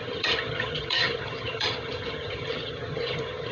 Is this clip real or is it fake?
fake